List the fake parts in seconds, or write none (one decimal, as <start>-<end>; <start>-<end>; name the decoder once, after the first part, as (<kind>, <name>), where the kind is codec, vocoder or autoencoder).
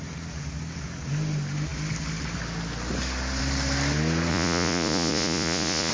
4.3-5.9 (vocoder, Vocos)